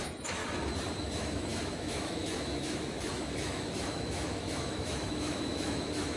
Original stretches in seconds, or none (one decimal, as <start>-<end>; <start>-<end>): 0.4-1.0